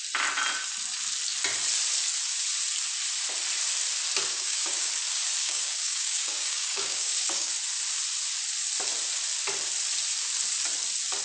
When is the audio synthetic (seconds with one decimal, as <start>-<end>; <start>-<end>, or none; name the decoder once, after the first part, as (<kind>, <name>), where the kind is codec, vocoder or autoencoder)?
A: 4.3-4.9 (codec, DAC); 5.4-7.5